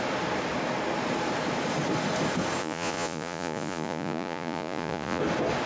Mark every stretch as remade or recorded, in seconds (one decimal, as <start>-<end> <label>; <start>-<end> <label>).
0.0-2.6 recorded; 2.6-5.2 remade; 5.2-5.7 recorded